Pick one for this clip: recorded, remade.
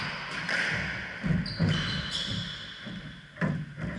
recorded